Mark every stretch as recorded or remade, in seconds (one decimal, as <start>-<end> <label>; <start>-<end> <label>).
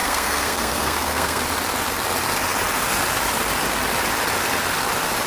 0.0-1.4 remade; 1.4-5.3 recorded